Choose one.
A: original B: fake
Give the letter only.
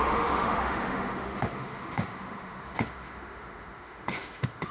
B